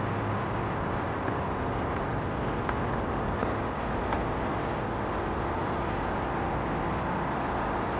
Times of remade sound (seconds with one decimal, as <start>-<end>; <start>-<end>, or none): none